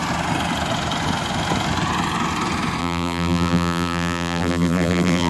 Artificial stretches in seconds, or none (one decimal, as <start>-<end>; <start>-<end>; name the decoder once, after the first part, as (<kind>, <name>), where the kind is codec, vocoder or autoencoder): 2.8-5.3 (vocoder, BigVGAN v2)